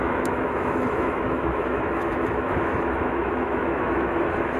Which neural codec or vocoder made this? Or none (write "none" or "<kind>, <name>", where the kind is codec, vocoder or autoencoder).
autoencoder, DAC-VAE